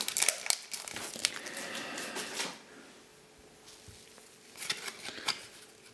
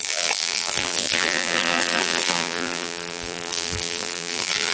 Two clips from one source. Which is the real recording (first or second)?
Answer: first